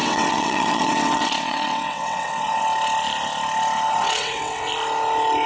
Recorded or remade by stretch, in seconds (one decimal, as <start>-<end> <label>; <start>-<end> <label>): 0.0-2.6 remade; 2.6-3.9 recorded; 3.9-4.7 remade; 4.7-5.5 recorded